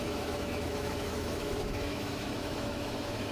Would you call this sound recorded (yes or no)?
no